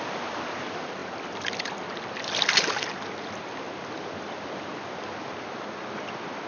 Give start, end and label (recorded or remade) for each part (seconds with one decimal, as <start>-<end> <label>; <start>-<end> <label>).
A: 0.0-6.5 recorded